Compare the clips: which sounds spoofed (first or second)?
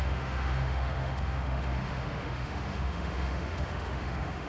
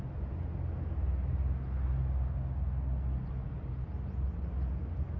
first